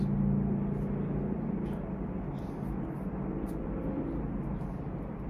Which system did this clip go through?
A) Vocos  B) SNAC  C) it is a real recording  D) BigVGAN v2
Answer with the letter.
C